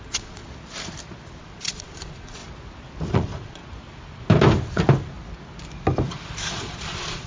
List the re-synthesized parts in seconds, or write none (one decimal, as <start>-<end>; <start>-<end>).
0.0-0.4; 1.4-2.4; 3.1-3.6; 6.4-7.3